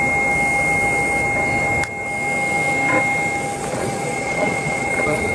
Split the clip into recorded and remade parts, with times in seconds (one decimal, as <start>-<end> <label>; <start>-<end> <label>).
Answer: 0.0-3.6 recorded; 3.6-5.3 remade

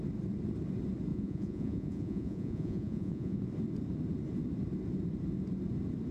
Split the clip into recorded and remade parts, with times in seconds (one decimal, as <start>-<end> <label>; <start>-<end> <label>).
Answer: 0.0-1.1 recorded; 1.1-3.4 remade; 3.4-6.1 recorded

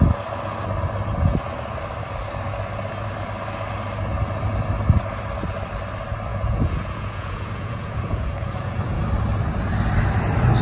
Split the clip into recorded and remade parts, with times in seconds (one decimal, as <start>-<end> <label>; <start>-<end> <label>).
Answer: 0.0-6.3 recorded; 6.3-9.0 remade; 9.0-10.6 recorded

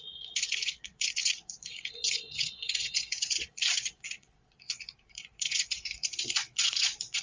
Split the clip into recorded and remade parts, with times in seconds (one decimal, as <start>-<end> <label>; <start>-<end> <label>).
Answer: 0.0-7.2 remade